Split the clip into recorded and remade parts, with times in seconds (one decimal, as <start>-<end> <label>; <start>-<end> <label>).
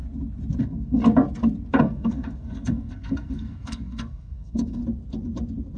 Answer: 0.0-0.6 recorded; 0.6-1.0 remade; 1.0-1.8 recorded; 1.8-4.8 remade; 4.8-5.8 recorded